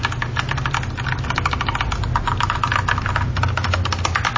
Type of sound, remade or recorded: recorded